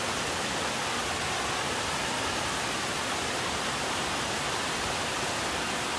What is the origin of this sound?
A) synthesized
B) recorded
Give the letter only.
B